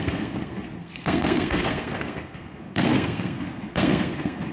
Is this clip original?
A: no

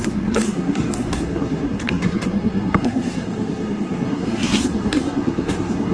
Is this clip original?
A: no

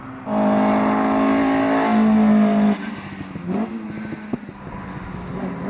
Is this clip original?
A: yes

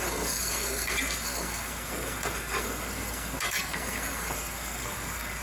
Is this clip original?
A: no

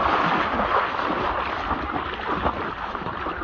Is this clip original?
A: yes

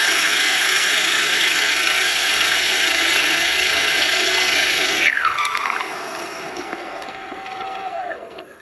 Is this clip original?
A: no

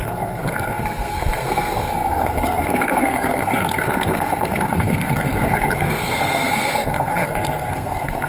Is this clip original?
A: no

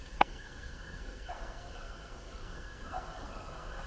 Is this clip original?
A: no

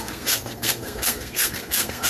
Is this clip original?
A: no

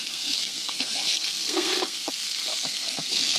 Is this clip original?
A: no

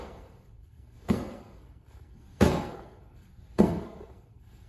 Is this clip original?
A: no